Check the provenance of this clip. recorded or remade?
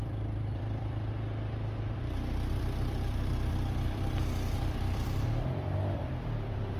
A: remade